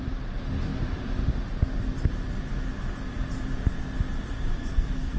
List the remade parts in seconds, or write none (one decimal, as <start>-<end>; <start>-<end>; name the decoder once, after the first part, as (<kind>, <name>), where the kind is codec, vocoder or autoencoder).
4.6-5.2 (codec, SNAC)